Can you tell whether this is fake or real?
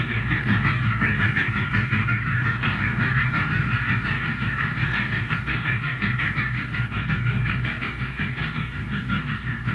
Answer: fake